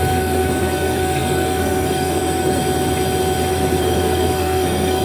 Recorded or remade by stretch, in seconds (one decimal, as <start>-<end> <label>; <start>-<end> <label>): 0.0-2.6 remade; 2.6-3.5 recorded; 3.5-5.0 remade